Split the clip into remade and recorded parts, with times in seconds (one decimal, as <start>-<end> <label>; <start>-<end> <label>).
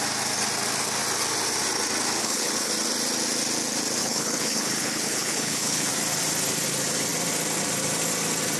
0.0-2.2 recorded; 2.2-2.7 remade; 2.7-4.0 recorded; 4.0-5.9 remade; 5.9-8.6 recorded